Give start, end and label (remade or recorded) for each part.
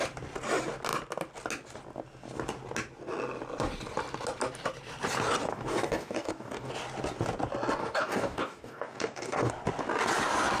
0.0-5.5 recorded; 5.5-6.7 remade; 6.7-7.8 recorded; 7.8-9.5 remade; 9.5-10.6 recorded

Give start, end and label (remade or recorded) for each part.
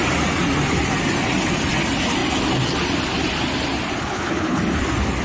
0.0-4.0 recorded; 4.0-4.6 remade; 4.6-5.2 recorded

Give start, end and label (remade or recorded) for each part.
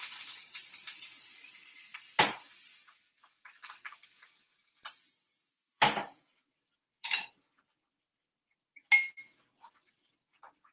0.0-5.5 recorded; 5.5-6.5 remade; 6.5-10.7 recorded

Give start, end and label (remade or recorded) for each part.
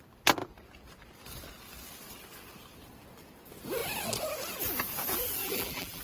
0.0-5.4 recorded; 5.4-6.0 remade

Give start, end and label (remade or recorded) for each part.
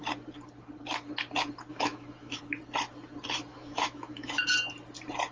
0.0-1.7 recorded; 1.7-2.4 remade; 2.4-3.5 recorded; 3.5-4.4 remade; 4.4-5.3 recorded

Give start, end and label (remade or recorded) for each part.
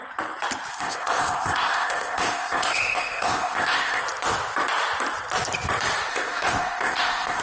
0.0-0.7 recorded; 0.7-4.0 remade; 4.0-6.1 recorded; 6.1-7.4 remade